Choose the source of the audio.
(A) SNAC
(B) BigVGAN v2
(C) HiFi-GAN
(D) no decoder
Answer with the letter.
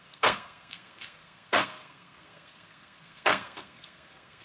A